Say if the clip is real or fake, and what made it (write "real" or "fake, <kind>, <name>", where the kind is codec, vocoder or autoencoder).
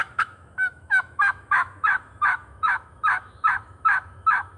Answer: fake, autoencoder, DAC-VAE